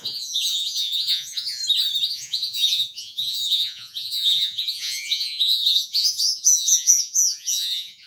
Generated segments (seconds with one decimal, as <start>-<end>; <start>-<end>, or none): 0.0-1.6; 2.1-8.1